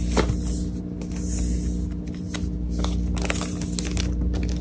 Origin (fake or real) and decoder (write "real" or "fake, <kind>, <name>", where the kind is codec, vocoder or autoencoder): real